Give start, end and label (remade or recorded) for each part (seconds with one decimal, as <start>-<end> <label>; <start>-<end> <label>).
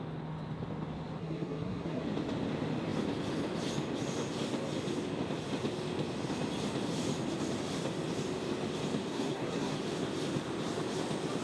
0.0-1.2 recorded; 1.2-2.0 remade; 2.0-9.1 recorded; 9.1-9.8 remade; 9.8-11.4 recorded